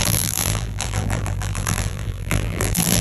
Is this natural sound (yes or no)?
no